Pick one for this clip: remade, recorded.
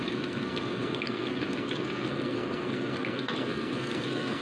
remade